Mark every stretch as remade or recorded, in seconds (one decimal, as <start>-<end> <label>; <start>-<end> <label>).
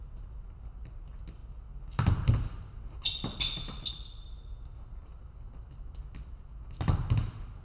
0.0-7.6 recorded